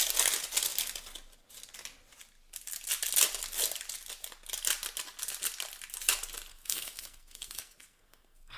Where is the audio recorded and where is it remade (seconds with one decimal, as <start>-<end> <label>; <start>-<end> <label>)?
0.0-6.5 recorded; 6.5-8.6 remade